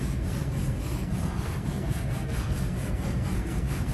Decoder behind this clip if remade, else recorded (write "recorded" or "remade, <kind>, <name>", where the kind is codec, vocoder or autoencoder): remade, codec, SNAC